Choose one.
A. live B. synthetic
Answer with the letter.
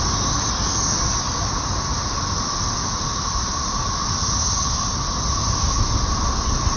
A